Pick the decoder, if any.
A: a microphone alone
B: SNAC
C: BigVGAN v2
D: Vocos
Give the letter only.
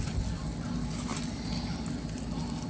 A